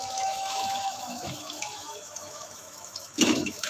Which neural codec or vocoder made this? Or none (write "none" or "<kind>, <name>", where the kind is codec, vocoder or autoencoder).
autoencoder, DAC-VAE